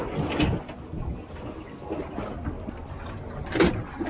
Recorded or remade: recorded